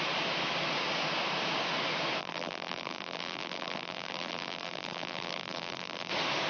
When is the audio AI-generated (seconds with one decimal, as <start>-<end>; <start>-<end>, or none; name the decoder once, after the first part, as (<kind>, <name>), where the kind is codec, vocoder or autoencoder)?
2.2-6.1 (vocoder, BigVGAN v2)